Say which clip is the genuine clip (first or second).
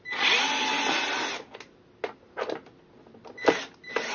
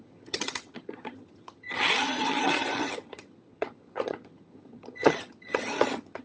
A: first